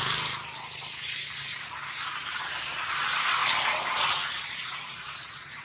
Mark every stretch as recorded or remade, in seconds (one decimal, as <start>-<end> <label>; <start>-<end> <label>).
0.0-5.6 recorded